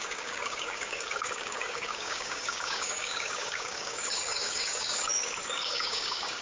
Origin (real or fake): fake